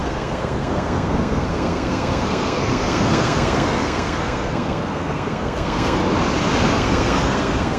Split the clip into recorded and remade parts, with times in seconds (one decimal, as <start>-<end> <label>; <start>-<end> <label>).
0.0-6.0 remade; 6.0-6.7 recorded; 6.7-7.8 remade